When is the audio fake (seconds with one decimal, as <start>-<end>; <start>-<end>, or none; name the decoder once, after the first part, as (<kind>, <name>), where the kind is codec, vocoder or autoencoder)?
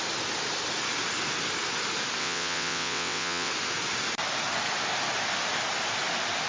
2.2-3.5 (vocoder, WaveNeXt)